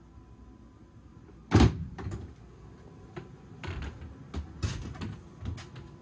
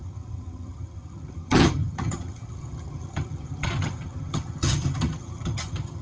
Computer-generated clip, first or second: second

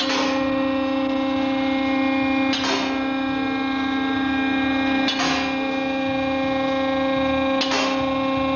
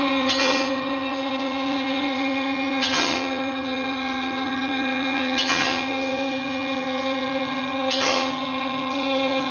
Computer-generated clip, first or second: second